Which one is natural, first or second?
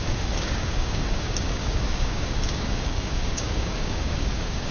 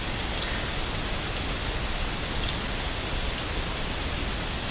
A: second